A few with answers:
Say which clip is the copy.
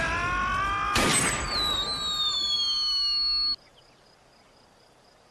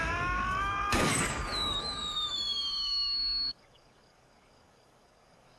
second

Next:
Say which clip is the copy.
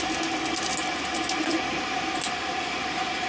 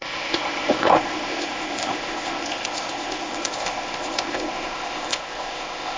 second